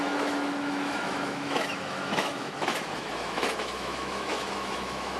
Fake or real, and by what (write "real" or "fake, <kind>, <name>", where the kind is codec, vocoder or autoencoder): fake, autoencoder, DAC-VAE